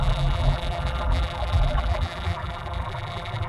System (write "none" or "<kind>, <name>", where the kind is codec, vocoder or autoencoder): vocoder, BigVGAN v2